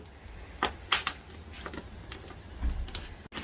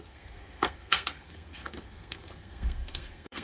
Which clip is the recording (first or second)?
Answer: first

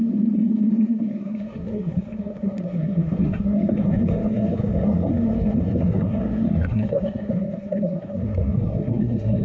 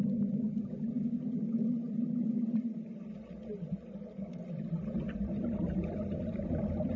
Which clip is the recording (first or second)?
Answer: second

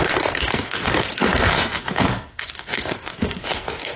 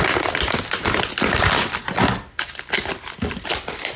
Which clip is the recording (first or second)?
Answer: second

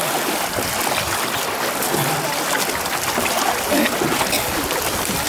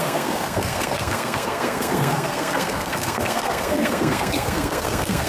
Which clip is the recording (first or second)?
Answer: first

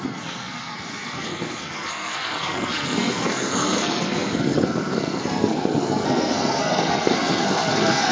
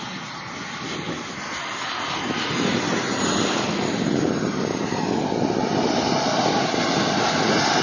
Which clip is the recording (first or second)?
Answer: second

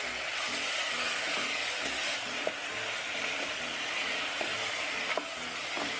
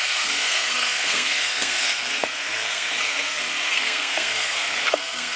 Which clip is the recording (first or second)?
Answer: first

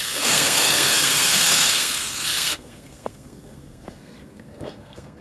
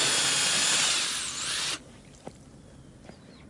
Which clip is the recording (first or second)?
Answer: second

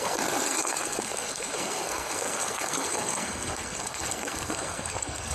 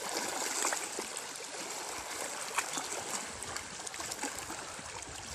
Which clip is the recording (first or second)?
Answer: second